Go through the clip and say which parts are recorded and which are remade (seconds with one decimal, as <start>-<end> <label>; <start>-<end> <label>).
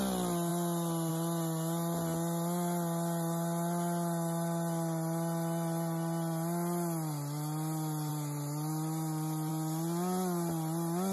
0.0-11.1 recorded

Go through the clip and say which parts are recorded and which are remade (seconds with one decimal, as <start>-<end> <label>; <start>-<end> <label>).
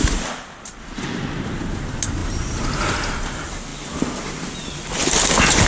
0.0-5.7 recorded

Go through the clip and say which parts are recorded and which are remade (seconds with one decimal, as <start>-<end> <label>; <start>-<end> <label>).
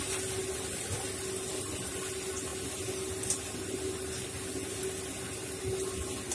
0.0-6.3 recorded